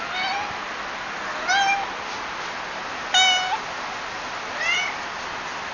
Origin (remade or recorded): recorded